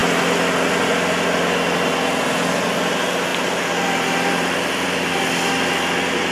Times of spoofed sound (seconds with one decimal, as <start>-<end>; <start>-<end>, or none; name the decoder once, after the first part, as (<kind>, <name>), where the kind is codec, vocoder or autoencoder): 3.3-5.1 (vocoder, BigVGAN v2)

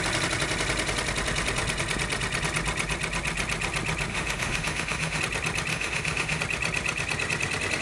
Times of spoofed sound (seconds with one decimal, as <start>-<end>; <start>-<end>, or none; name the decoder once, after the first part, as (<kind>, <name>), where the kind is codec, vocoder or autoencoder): 4.1-5.2 (autoencoder, DAC-VAE); 5.7-6.4

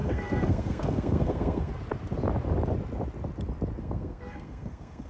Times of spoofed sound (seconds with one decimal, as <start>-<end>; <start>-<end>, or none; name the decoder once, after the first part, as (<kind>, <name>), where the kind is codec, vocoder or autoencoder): 0.0-1.7 (codec, SNAC); 3.8-5.1